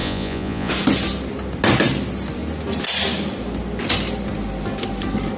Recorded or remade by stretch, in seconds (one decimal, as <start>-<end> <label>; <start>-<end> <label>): 0.0-0.7 remade; 0.7-5.4 recorded